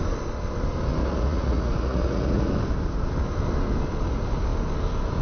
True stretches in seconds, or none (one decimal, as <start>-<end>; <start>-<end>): 0.0-1.0; 2.5-5.2